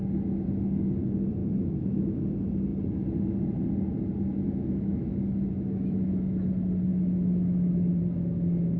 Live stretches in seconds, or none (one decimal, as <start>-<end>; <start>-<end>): 0.0-1.4; 2.2-4.3; 6.5-6.9; 8.0-8.8